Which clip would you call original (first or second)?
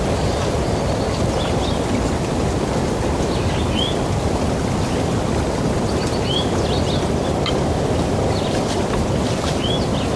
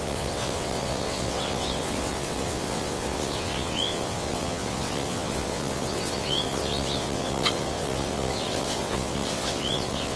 first